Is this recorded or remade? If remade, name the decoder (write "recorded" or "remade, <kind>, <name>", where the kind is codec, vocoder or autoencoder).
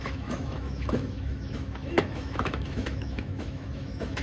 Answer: remade, autoencoder, DAC-VAE